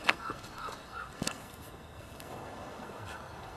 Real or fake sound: fake